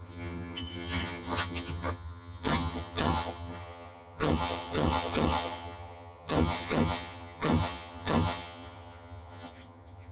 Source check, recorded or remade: remade